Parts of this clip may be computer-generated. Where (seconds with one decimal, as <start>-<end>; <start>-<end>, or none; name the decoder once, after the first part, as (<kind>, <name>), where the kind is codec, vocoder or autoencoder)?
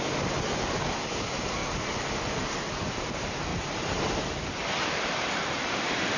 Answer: 3.5-6.2 (vocoder, BigVGAN v2)